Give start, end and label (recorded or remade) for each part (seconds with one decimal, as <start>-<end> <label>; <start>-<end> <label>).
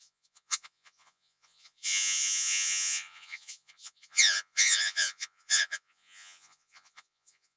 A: 0.0-7.6 remade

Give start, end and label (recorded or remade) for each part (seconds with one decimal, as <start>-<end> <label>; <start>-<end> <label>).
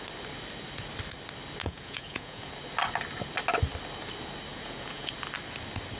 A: 0.0-1.6 recorded; 1.6-2.5 remade; 2.5-4.5 recorded; 4.5-5.1 remade; 5.1-6.0 recorded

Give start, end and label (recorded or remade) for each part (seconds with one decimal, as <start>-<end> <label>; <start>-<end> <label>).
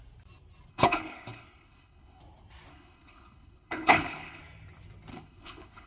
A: 0.0-0.7 recorded; 0.7-2.2 remade; 2.2-2.7 recorded; 2.7-4.4 remade; 4.4-5.1 recorded; 5.1-5.9 remade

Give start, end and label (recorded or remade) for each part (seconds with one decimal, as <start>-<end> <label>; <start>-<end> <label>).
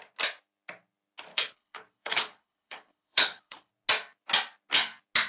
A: 0.0-1.3 recorded; 1.3-3.7 remade; 3.7-5.3 recorded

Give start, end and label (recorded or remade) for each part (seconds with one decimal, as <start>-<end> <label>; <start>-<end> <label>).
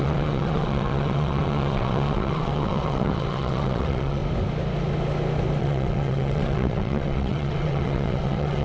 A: 0.0-4.2 remade; 4.2-5.6 recorded; 5.6-8.6 remade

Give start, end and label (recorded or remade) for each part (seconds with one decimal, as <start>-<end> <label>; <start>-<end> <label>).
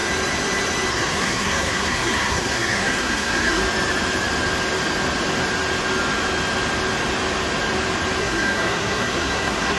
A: 0.0-0.9 recorded; 0.9-3.6 remade; 3.6-8.2 recorded; 8.2-9.8 remade